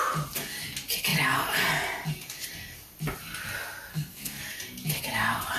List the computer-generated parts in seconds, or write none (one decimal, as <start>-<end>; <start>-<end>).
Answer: 3.9-4.4

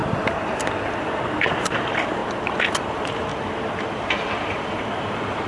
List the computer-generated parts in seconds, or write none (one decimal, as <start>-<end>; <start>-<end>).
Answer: 1.0-2.2; 2.8-3.3; 4.0-5.5

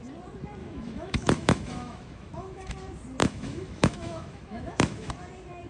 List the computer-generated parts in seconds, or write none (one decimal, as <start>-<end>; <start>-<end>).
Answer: 0.6-2.7; 3.2-5.1

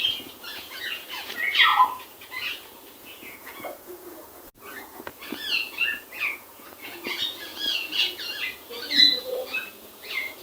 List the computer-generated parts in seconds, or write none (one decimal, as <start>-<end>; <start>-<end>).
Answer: 0.0-10.4

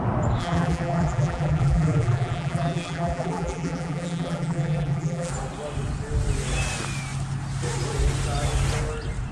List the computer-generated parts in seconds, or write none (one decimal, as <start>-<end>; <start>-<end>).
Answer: 0.4-5.3

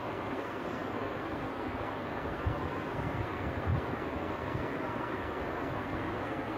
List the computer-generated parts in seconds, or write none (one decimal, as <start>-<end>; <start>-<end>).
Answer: 0.0-6.6